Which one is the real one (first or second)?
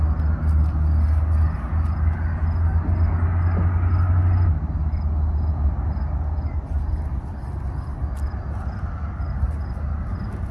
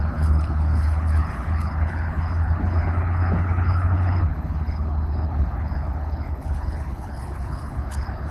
first